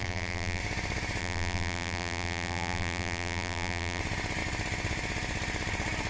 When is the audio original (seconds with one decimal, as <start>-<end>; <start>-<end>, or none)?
0.6-1.2; 4.0-6.1